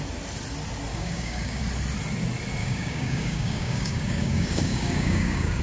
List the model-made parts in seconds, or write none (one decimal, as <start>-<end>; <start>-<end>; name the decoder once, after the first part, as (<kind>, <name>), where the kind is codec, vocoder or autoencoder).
0.9-1.6 (codec, DAC); 2.6-5.6